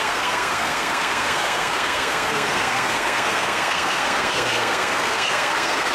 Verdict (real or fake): fake